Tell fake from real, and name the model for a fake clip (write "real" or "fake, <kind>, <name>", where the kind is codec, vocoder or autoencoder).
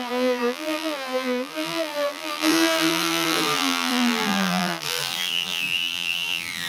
fake, vocoder, BigVGAN v2